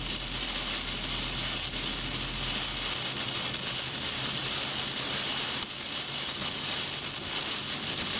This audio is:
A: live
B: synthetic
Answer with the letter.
A